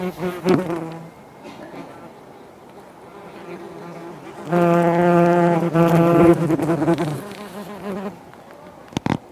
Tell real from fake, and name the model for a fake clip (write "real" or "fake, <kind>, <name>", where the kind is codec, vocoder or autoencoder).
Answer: real